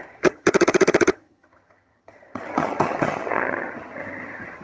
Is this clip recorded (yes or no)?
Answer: no